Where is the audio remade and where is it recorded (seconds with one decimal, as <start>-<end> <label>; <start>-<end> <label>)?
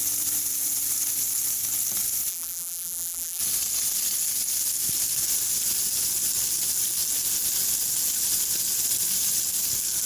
0.0-2.3 recorded; 2.3-3.4 remade; 3.4-10.1 recorded